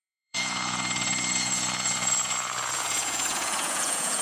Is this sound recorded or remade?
remade